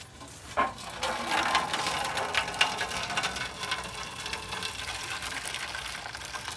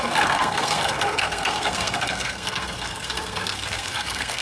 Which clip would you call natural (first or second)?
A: first